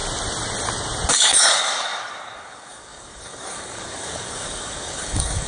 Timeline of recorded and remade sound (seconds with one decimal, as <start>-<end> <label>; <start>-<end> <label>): 0.0-1.1 recorded; 1.1-5.5 remade